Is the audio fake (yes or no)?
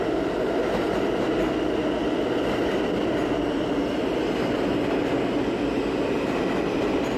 no